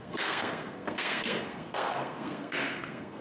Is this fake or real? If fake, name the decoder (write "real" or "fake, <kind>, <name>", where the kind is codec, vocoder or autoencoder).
fake, codec, SNAC